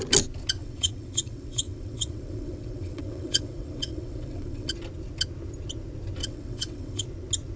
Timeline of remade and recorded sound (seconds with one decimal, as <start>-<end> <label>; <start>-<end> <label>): 0.0-0.6 recorded; 0.6-4.7 remade; 4.7-6.2 recorded; 6.2-7.0 remade; 7.0-7.6 recorded